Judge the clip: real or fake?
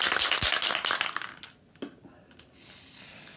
real